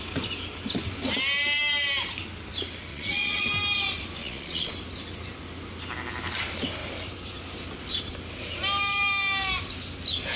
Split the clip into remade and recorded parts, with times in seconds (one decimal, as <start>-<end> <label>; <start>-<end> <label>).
0.0-2.9 recorded; 2.9-3.5 remade; 3.5-4.2 recorded; 4.2-4.7 remade; 4.7-10.4 recorded